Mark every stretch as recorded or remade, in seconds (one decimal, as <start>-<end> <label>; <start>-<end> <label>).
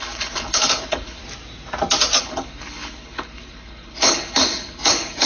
0.0-1.2 remade; 1.2-2.2 recorded; 2.2-5.3 remade